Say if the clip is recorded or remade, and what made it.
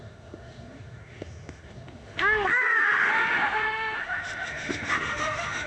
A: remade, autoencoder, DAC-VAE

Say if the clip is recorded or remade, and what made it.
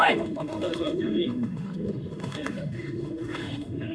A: remade, autoencoder, DAC-VAE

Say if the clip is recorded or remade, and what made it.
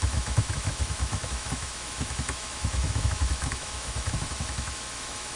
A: remade, autoencoder, DAC-VAE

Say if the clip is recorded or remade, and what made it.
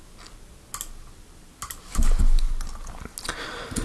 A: recorded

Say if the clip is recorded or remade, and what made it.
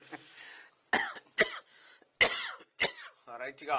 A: recorded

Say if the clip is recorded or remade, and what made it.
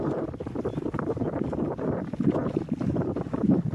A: recorded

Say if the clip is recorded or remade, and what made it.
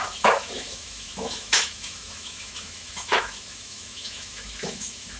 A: remade, autoencoder, DAC-VAE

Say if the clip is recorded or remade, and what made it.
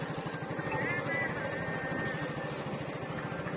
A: recorded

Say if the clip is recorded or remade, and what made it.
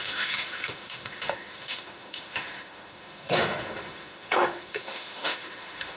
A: remade, autoencoder, DAC-VAE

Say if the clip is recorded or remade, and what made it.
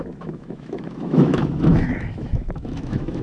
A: remade, autoencoder, DAC-VAE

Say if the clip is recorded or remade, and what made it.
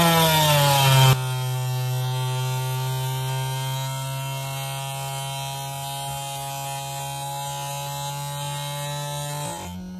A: recorded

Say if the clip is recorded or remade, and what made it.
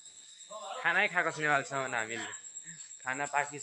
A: remade, autoencoder, DAC-VAE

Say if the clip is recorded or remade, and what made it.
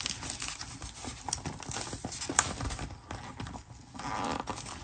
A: recorded